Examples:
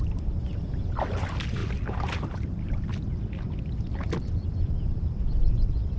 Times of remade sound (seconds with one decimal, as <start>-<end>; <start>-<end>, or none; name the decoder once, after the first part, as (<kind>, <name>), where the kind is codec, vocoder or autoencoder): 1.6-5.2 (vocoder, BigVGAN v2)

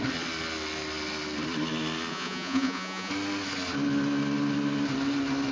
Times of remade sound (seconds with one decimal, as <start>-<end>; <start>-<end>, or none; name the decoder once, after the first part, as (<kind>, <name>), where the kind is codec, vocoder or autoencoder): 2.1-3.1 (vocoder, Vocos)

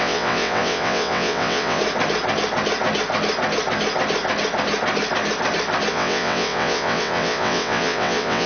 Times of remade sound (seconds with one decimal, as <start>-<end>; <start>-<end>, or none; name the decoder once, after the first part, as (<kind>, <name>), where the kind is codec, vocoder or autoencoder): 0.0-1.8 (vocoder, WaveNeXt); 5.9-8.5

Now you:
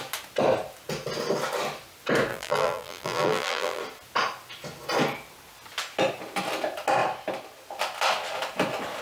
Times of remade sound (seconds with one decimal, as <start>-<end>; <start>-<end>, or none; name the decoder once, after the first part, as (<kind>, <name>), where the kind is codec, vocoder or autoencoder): 2.3-3.8 (vocoder, BigVGAN v2)